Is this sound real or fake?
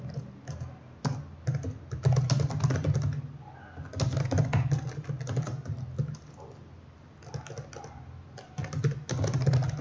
real